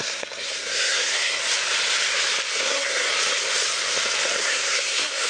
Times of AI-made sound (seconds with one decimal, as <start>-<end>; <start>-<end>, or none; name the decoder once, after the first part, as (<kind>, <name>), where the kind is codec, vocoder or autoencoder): 0.0-1.4 (codec, SNAC); 2.5-3.1; 4.4-5.3